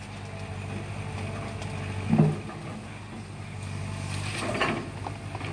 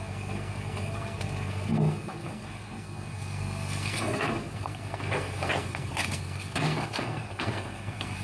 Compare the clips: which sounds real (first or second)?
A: first